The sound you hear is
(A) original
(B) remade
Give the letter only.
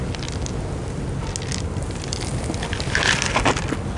A